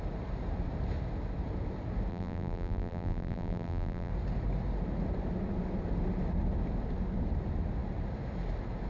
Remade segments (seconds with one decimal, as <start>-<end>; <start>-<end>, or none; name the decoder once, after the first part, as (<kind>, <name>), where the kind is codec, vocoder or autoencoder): 2.1-4.1 (vocoder, BigVGAN v2)